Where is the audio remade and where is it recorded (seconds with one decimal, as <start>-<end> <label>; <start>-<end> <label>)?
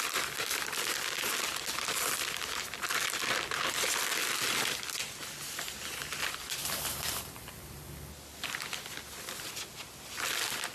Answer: 0.0-6.6 recorded; 6.6-7.8 remade; 7.8-10.7 recorded